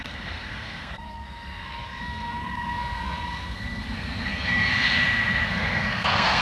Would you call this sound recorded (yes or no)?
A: no